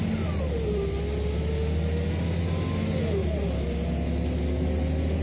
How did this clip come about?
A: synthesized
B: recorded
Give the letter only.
B